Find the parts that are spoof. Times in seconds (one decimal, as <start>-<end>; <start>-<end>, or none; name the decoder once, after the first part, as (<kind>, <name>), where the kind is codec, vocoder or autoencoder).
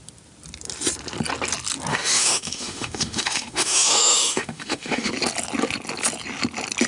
1.9-5.1 (autoencoder, DAC-VAE)